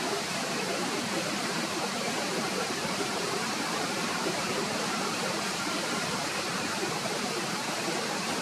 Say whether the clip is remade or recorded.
remade